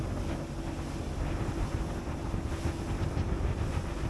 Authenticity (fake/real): real